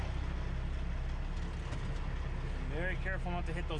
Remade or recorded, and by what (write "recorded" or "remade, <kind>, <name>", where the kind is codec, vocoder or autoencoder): recorded